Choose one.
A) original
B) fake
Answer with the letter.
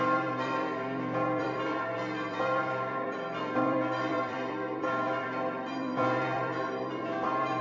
B